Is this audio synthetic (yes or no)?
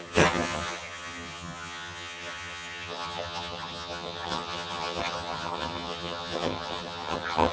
yes